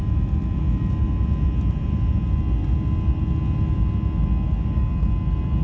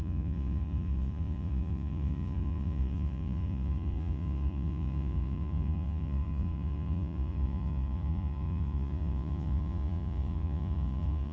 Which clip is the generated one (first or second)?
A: second